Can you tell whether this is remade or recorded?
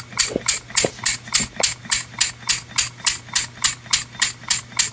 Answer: recorded